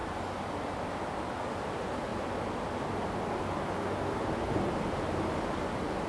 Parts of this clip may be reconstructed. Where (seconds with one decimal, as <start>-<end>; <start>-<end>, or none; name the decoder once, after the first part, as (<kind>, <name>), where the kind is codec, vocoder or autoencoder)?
none